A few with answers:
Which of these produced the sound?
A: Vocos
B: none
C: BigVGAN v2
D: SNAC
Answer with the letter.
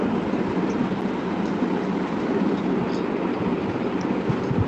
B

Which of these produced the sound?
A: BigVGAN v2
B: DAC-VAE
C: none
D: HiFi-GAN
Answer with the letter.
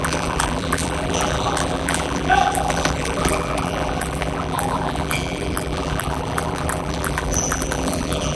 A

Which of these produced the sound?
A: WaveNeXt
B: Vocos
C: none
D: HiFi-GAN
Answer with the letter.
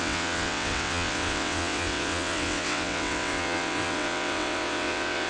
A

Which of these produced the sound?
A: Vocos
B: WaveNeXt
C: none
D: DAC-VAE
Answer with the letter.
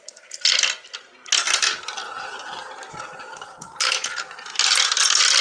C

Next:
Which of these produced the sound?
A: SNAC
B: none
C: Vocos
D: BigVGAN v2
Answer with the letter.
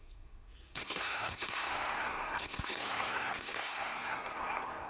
A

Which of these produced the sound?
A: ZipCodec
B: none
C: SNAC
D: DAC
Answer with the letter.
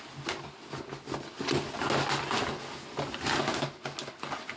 B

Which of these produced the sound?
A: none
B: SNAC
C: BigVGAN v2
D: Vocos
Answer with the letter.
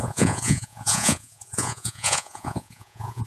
D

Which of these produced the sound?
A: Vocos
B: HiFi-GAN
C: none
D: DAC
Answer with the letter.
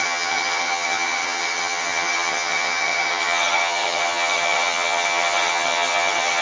B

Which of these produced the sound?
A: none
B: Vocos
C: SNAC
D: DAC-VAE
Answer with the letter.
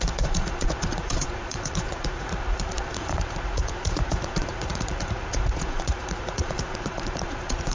B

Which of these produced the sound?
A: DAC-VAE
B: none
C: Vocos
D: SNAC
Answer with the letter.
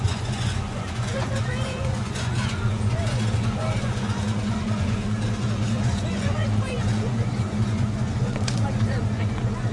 C